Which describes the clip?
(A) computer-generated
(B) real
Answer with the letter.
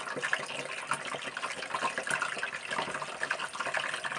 B